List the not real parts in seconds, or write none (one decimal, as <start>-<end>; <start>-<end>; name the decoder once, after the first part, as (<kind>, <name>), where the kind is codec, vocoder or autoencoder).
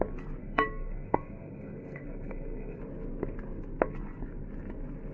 0.4-2.8 (codec, SNAC)